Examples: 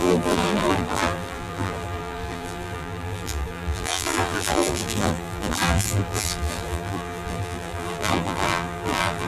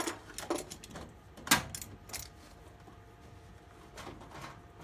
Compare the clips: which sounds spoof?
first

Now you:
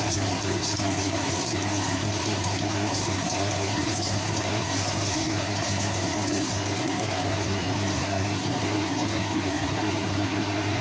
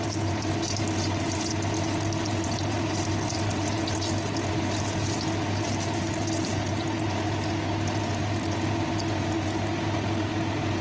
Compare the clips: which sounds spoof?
first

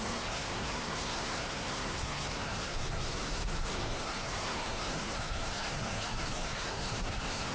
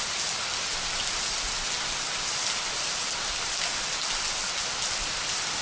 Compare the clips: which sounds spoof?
first